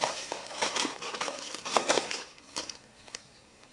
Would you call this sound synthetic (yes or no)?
yes